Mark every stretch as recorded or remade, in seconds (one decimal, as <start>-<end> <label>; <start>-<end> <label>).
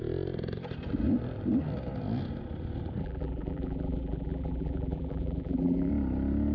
0.0-3.0 recorded; 3.0-5.9 remade; 5.9-6.5 recorded